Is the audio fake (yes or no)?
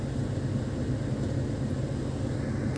no